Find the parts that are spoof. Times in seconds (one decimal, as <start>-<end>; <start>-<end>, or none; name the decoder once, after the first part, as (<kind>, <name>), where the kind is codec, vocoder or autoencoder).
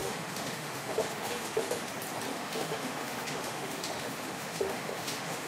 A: 0.0-1.9 (autoencoder, DAC-VAE); 2.3-5.5